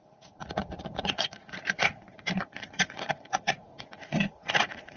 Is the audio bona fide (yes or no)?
no